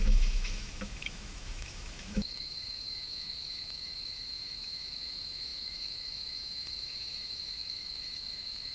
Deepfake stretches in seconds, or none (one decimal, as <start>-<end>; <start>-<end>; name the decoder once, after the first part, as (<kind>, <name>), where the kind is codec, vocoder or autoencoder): 0.0-8.7 (autoencoder, DAC-VAE)